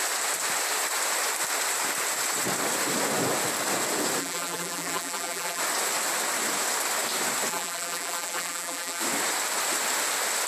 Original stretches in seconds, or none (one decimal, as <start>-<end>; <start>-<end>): 0.0-4.2; 5.6-7.5; 9.0-10.5